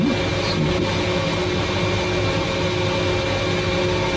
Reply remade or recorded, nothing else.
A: recorded